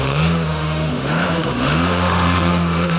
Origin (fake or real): fake